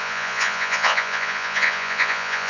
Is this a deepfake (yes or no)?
yes